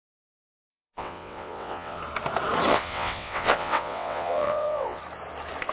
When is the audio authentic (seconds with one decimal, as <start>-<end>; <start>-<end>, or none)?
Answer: 0.0-0.7; 2.0-2.7; 5.0-5.7